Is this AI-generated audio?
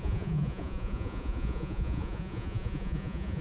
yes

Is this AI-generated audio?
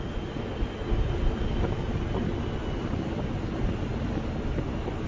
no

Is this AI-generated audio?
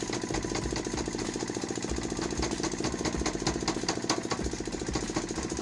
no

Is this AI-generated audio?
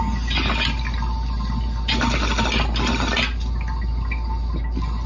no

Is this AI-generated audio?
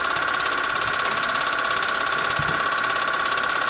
no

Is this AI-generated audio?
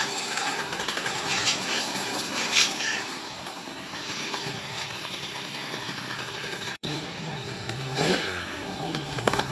yes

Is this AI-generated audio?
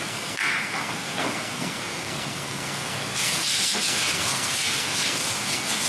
yes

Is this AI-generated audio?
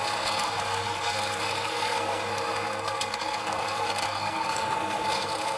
yes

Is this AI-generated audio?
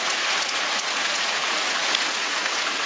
yes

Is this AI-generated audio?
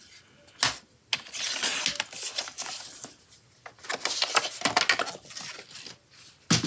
no